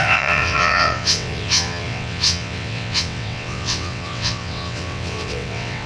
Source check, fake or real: fake